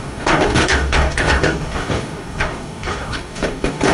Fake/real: fake